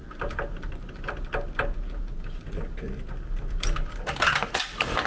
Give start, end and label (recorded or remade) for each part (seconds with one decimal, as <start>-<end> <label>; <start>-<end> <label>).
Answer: 0.0-5.1 recorded